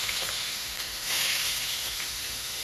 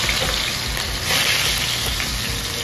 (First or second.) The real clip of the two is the second